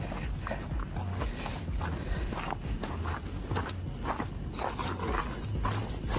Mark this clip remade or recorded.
recorded